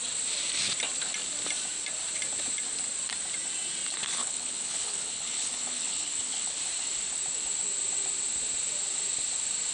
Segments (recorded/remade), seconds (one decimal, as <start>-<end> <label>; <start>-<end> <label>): 0.0-4.2 recorded; 4.2-6.6 remade; 6.6-9.7 recorded